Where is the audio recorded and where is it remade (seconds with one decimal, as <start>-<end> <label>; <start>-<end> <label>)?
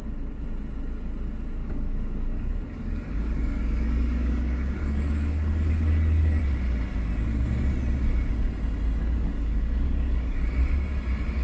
0.0-1.6 recorded; 1.6-6.4 remade; 6.4-9.0 recorded; 9.0-10.4 remade; 10.4-11.4 recorded